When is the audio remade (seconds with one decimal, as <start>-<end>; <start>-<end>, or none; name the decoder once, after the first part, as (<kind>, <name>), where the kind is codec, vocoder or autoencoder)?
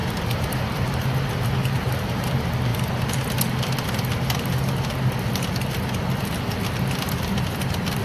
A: 0.0-2.3 (vocoder, BigVGAN v2)